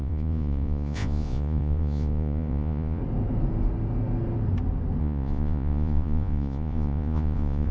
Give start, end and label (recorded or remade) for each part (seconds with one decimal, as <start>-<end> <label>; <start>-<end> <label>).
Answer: 0.0-3.0 remade; 3.0-5.0 recorded; 5.0-7.7 remade